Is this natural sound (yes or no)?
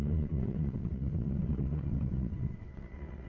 no